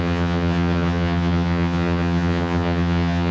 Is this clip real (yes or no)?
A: no